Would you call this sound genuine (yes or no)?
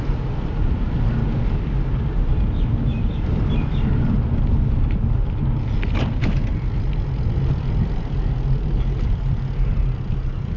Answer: yes